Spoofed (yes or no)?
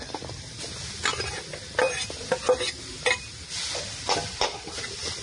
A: no